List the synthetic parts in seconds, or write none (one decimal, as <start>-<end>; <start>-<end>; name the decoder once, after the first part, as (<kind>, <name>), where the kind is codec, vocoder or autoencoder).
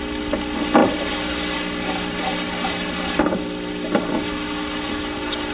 0.8-4.1 (vocoder, BigVGAN v2)